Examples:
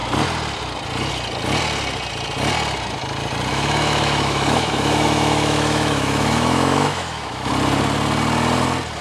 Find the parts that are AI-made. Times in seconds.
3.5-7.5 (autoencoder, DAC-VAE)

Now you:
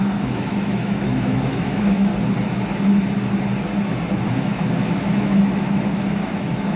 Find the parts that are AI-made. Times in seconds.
0.0-2.1 (autoencoder, DAC-VAE); 4.3-6.8

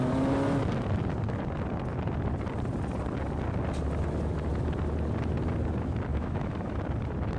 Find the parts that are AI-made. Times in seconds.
6.1-6.8 (autoencoder, DAC-VAE)

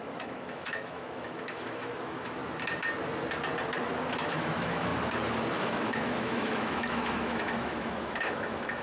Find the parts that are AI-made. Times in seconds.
0.0-2.4 (autoencoder, DAC-VAE); 4.3-4.9; 5.5-8.8

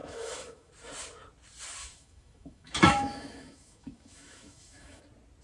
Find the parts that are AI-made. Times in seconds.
0.0-0.7 (autoencoder, DAC-VAE); 1.8-5.0

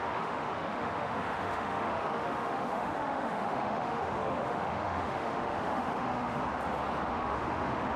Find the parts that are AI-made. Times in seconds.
0.0-6.4 (autoencoder, DAC-VAE); 7.1-8.0

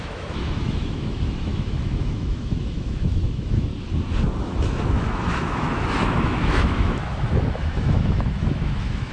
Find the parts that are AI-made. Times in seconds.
0.0-3.7 (autoencoder, DAC-VAE); 4.4-9.1

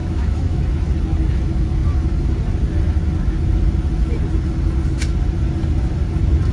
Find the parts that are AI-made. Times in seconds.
0.0-0.6 (autoencoder, DAC-VAE)